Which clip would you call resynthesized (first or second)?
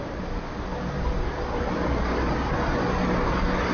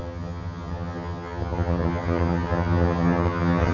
second